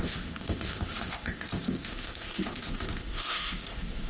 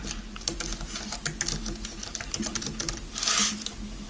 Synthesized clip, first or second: first